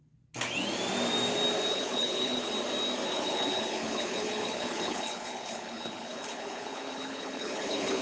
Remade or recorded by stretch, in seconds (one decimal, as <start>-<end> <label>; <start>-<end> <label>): 0.0-1.7 recorded; 1.7-2.5 remade; 2.5-3.1 recorded; 3.1-8.0 remade